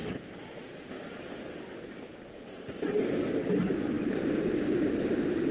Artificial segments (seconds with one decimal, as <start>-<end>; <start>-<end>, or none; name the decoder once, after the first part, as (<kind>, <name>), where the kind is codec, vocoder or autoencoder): none